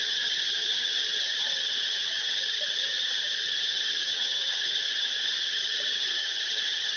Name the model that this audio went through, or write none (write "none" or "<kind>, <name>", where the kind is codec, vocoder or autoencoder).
vocoder, HiFi-GAN